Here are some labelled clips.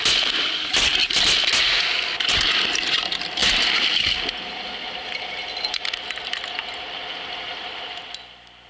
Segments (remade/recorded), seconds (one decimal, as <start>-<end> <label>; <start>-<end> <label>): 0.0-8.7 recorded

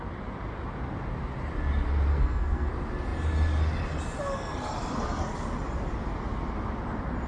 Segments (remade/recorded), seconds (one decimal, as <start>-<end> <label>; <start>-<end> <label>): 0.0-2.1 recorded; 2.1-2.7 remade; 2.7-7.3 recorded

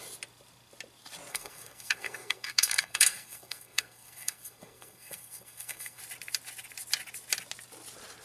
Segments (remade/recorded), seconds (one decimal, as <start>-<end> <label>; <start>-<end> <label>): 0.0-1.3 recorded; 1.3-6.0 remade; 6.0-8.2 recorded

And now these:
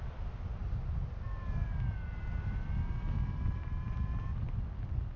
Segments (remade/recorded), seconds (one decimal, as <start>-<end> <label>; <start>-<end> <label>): 0.0-5.2 recorded